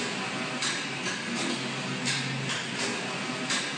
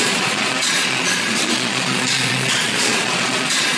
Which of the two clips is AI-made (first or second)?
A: second